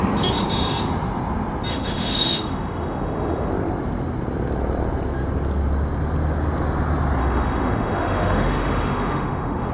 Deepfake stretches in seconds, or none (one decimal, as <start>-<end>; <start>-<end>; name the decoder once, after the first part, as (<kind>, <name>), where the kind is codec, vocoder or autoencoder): 1.7-3.5 (autoencoder, DAC-VAE); 7.2-9.7